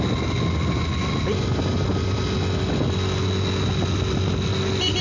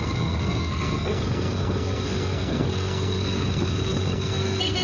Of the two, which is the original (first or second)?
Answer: first